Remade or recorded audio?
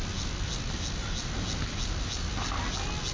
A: recorded